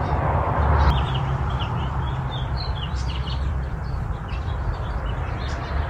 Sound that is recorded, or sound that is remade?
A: remade